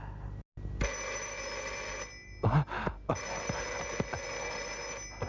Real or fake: real